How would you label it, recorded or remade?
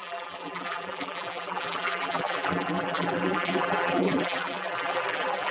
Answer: remade